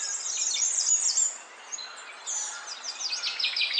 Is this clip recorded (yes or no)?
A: yes